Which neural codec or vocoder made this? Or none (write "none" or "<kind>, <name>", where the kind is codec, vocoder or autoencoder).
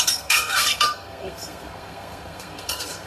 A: codec, SNAC